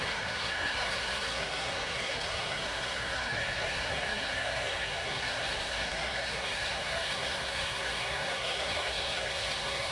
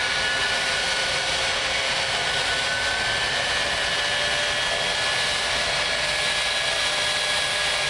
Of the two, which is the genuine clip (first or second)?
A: second